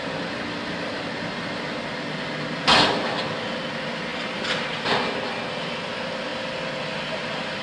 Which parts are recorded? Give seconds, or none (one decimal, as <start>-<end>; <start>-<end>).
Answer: 0.0-7.6